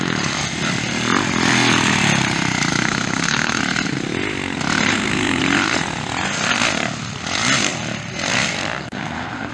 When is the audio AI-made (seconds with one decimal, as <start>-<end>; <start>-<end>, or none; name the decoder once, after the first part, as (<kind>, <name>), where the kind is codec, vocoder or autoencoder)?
2.7-3.6 (codec, SNAC); 4.9-5.4; 8.8-9.5